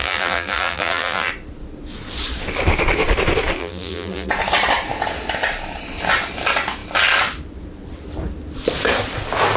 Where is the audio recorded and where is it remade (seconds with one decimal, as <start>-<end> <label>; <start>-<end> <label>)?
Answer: 0.0-1.3 remade; 1.3-3.6 recorded; 3.6-4.3 remade; 4.3-9.6 recorded

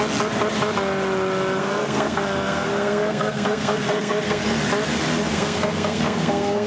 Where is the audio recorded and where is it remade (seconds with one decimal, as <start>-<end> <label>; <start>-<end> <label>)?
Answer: 0.0-1.6 recorded; 1.6-4.4 remade; 4.4-5.3 recorded; 5.3-6.7 remade

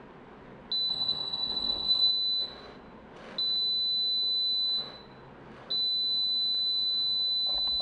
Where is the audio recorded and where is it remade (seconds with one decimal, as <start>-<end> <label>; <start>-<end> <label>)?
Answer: 0.0-0.9 recorded; 0.9-2.1 remade; 2.1-7.8 recorded

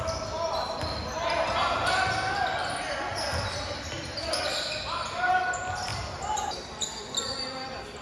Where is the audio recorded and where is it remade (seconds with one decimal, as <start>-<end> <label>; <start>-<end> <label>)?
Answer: 0.0-3.1 recorded; 3.1-5.3 remade; 5.3-5.9 recorded; 5.9-6.8 remade; 6.8-8.0 recorded